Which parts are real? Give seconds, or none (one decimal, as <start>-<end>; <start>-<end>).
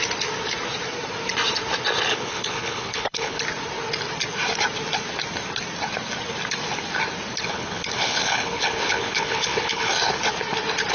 0.0-2.1; 3.4-7.5; 9.9-10.9